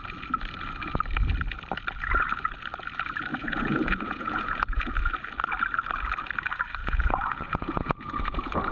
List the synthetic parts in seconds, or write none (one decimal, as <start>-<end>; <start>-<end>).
3.3-4.9; 6.8-8.7